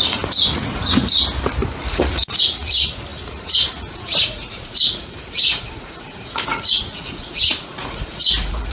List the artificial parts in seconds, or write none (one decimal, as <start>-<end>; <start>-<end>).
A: 0.0-0.8; 1.9-8.7